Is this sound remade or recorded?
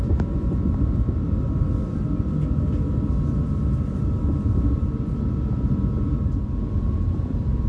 recorded